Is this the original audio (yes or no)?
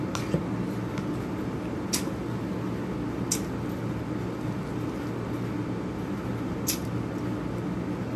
yes